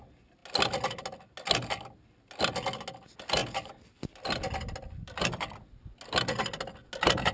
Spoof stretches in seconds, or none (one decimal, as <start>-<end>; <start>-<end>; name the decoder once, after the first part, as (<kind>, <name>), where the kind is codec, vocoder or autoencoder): none